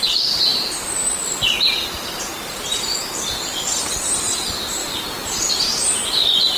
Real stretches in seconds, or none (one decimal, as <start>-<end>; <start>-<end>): 0.0-0.5; 1.4-2.3; 3.0-4.8; 5.5-6.6